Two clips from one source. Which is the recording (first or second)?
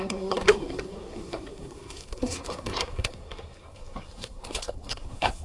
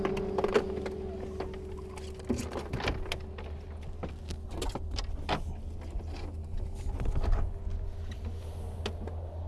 second